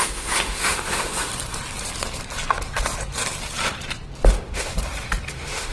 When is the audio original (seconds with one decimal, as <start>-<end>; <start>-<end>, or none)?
1.3-4.3; 4.7-5.3